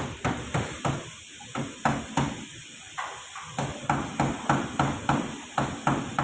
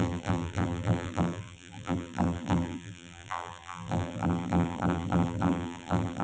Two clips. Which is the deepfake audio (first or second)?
second